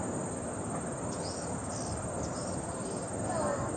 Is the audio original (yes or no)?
yes